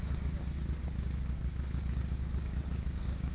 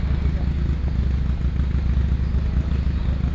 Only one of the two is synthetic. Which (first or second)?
first